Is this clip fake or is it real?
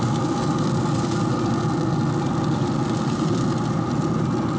real